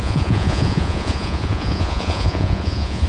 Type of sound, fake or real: fake